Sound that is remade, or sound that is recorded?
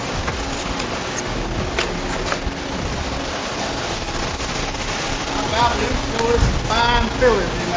recorded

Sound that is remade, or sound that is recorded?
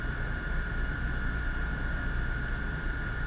recorded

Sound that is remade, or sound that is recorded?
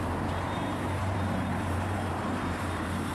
remade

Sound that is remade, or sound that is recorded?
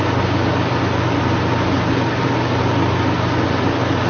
recorded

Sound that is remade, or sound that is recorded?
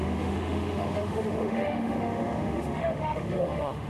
remade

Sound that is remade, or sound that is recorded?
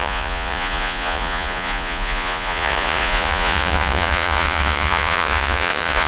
remade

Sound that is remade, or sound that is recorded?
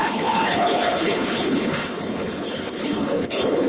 remade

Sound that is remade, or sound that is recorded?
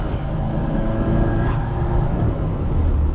remade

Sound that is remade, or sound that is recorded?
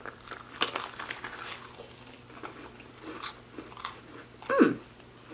recorded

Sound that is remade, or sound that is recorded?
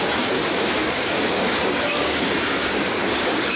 remade